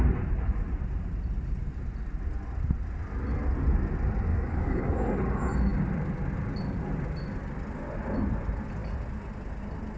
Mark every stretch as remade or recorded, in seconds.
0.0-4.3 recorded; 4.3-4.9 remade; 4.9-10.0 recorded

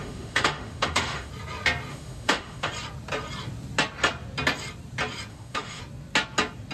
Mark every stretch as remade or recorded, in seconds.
0.0-1.3 remade; 1.3-1.9 recorded; 1.9-2.7 remade; 2.7-5.3 recorded; 5.3-5.8 remade; 5.8-6.7 recorded

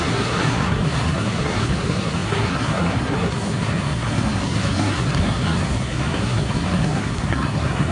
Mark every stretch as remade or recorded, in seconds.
0.0-7.9 remade

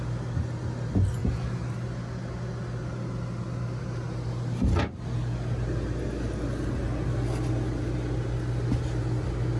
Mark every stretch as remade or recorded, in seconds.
0.0-9.6 recorded

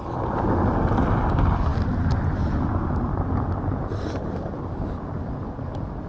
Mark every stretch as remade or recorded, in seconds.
0.0-6.1 recorded